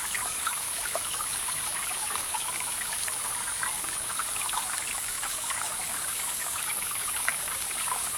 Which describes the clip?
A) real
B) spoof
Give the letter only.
B